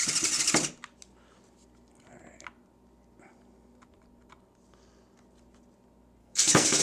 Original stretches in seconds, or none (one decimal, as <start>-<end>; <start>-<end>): 0.0-6.2